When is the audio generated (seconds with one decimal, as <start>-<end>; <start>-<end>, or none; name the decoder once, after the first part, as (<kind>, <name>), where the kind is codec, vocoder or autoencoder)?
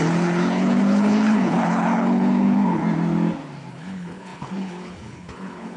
0.0-2.8 (codec, HILCodec); 3.7-5.8